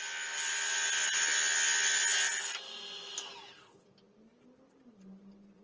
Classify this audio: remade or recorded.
recorded